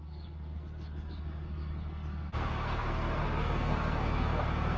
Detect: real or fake fake